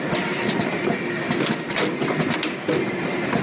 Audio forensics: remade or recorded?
recorded